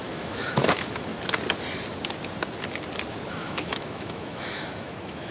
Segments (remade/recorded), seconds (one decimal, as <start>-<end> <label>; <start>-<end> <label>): 0.0-1.1 remade; 1.1-3.3 recorded; 3.3-5.3 remade